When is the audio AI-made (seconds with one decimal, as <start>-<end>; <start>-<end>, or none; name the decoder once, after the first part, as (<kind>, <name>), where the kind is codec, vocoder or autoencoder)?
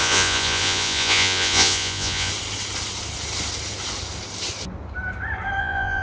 0.0-2.3 (vocoder, Vocos); 5.6-6.0